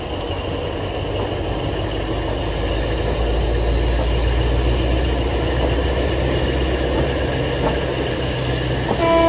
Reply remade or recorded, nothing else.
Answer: recorded